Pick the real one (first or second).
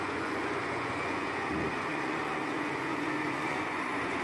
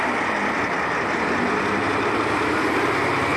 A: second